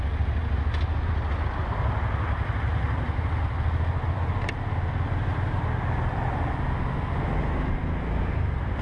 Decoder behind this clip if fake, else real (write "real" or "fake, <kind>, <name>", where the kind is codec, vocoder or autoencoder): real